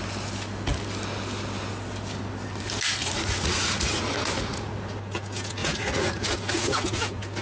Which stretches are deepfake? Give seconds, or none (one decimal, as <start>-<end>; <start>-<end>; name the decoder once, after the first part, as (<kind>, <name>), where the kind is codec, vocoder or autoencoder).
3.0-4.8 (vocoder, Vocos); 5.6-6.3